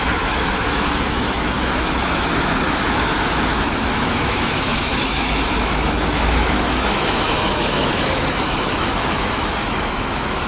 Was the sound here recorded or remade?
remade